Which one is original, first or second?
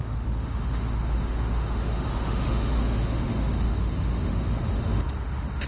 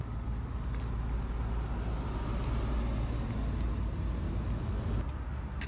second